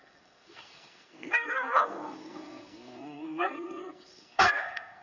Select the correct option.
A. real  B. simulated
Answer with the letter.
B